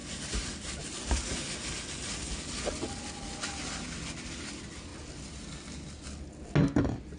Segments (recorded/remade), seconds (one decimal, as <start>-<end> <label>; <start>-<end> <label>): 0.0-0.8 remade; 0.8-4.9 recorded; 4.9-6.0 remade; 6.0-7.2 recorded